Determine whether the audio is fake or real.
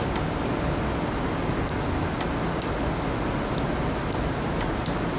real